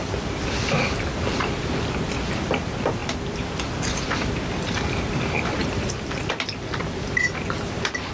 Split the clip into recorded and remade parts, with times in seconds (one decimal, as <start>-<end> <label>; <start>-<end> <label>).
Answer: 0.0-8.1 recorded